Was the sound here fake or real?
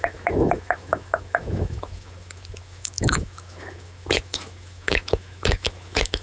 fake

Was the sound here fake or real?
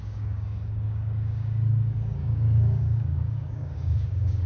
fake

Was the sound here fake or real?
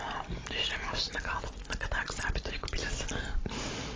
real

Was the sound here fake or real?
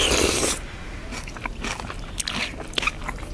real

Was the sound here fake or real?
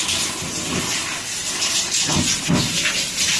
real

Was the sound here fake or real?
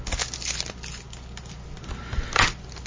real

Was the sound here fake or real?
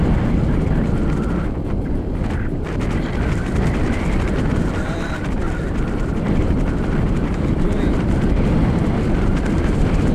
fake